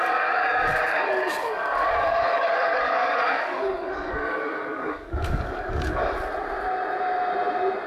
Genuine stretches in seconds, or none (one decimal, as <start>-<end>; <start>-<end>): 6.0-7.9